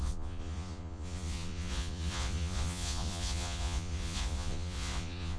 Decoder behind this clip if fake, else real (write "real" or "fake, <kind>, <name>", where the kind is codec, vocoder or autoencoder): fake, vocoder, Vocos